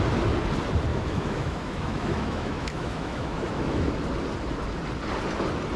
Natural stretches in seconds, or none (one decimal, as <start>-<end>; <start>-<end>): 0.0-0.9; 3.9-5.8